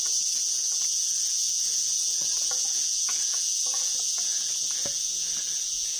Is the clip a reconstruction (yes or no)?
yes